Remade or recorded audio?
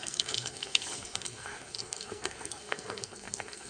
remade